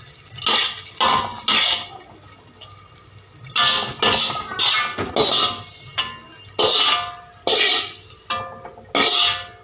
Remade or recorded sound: recorded